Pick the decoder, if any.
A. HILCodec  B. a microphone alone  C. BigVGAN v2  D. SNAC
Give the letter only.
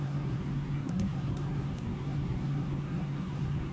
D